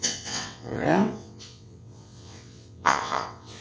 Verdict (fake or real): fake